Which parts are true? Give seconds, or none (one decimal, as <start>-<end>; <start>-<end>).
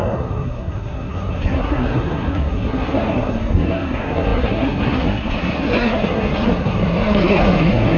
none